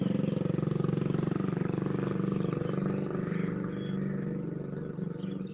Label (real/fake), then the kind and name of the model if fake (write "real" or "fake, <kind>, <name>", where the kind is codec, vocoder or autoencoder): real